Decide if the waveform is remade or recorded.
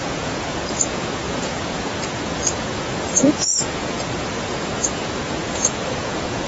remade